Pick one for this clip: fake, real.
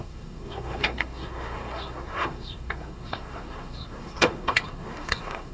fake